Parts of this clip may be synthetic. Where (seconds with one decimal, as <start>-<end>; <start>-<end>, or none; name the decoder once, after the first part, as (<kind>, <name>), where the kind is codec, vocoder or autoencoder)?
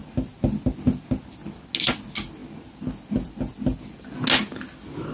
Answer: none